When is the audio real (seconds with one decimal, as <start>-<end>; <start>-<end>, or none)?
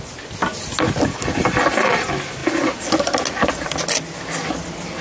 0.0-5.0